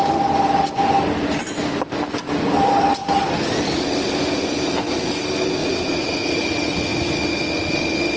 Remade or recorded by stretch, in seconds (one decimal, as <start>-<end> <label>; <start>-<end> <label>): 0.0-5.6 recorded; 5.6-6.4 remade; 6.4-8.2 recorded